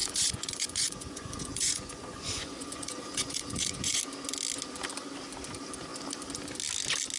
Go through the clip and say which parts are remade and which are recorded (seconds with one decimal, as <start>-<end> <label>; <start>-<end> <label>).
0.0-4.0 remade; 4.0-7.2 recorded